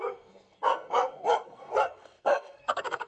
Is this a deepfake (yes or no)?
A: yes